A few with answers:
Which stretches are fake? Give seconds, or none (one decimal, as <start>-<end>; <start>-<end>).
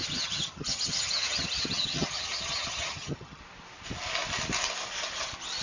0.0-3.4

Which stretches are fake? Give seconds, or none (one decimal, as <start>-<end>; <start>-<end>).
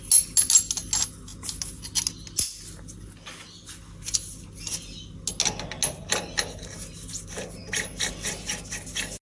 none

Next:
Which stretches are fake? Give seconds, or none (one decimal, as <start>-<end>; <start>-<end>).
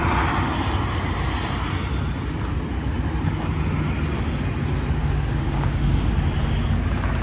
5.0-6.1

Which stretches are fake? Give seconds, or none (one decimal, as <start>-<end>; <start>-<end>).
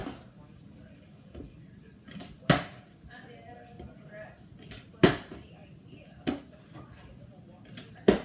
none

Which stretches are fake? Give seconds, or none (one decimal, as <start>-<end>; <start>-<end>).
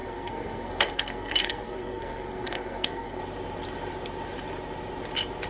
0.0-3.2